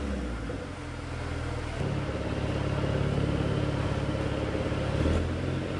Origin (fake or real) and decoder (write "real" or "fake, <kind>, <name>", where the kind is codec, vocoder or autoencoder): real